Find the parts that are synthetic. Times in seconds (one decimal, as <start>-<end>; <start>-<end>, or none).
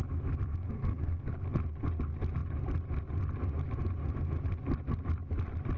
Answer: 0.5-1.3